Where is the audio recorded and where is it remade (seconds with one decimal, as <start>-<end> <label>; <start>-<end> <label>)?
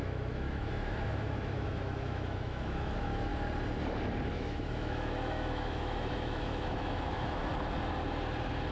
0.0-3.3 remade; 3.3-4.3 recorded; 4.3-7.4 remade; 7.4-8.7 recorded